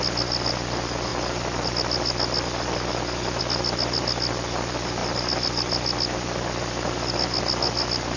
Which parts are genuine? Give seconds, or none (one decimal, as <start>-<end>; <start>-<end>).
0.0-8.2